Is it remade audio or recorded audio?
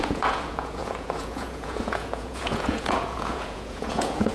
remade